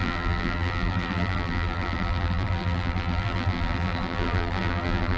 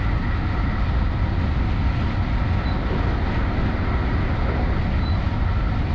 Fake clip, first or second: first